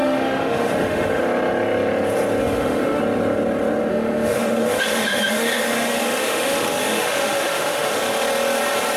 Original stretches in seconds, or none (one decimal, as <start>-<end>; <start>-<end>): 1.2-2.4; 3.0-3.9; 8.0-9.0